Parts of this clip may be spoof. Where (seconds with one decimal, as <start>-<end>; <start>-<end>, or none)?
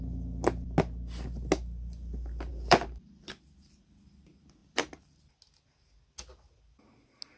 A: 2.5-3.1; 4.6-5.2